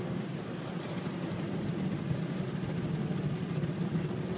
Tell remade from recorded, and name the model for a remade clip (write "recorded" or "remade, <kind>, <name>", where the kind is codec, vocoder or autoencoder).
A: recorded